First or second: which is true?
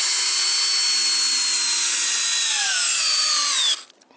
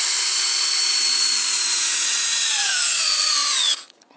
first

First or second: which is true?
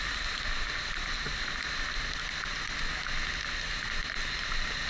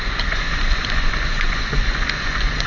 first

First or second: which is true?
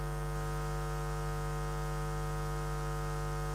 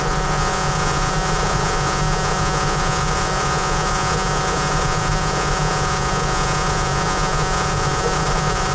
first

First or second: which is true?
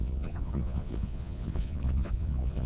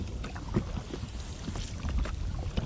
second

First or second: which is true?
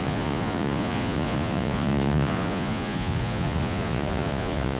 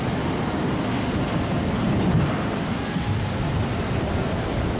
second